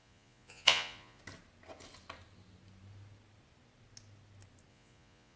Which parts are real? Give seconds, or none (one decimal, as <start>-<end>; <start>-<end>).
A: 1.2-4.7